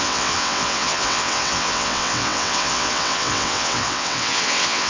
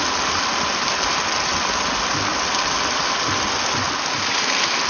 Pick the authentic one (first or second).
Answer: second